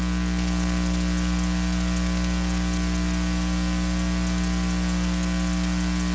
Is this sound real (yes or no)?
yes